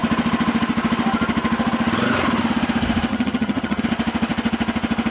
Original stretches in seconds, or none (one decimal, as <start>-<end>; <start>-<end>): 0.0-3.1; 3.8-5.1